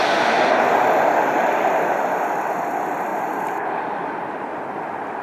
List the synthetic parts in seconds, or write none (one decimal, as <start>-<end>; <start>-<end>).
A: 0.7-5.2